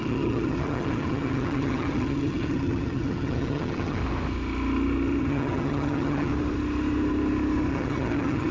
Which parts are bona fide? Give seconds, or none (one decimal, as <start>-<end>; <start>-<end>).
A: 4.0-5.2; 6.3-7.7